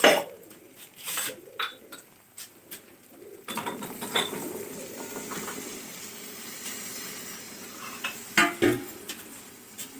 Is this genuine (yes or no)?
yes